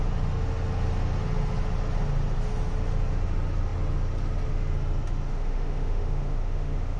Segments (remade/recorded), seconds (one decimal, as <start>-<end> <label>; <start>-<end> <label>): 0.0-5.3 recorded; 5.3-7.0 remade